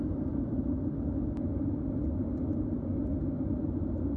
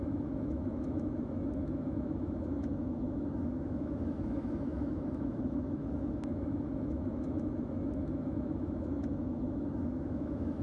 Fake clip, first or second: second